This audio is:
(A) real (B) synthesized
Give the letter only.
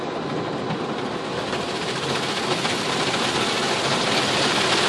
A